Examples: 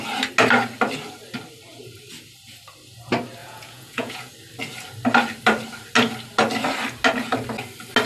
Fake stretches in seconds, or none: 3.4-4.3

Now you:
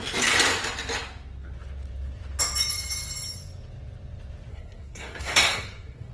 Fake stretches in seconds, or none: 4.5-6.1